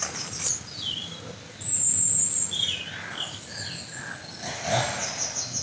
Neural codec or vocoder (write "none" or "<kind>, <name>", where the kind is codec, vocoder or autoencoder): none